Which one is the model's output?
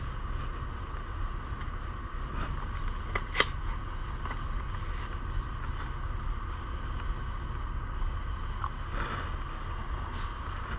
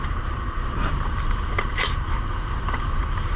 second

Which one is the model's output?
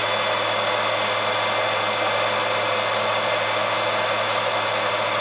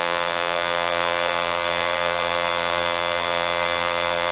second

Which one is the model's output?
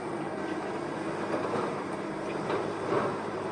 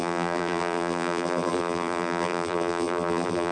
second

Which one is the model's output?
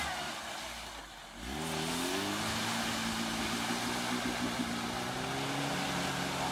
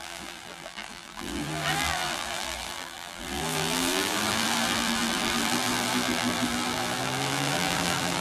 second